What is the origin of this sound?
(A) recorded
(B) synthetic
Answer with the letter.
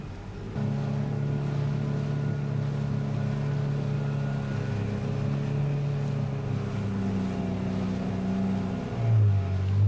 A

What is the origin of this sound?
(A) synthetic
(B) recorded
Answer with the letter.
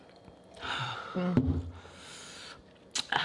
B